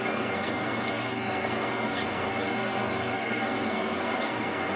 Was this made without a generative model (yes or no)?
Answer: no